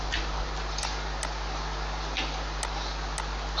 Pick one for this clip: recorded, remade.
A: recorded